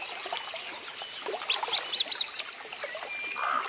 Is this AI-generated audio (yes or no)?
no